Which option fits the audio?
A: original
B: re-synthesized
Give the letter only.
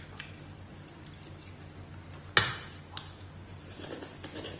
A